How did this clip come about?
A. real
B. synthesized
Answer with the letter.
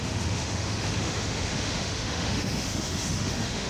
B